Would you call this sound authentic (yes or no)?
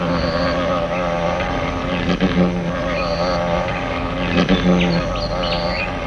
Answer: yes